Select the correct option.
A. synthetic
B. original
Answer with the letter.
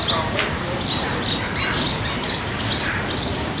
B